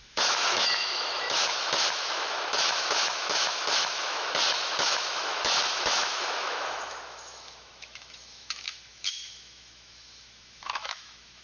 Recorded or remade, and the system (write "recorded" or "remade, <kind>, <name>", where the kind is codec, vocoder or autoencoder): remade, autoencoder, DAC-VAE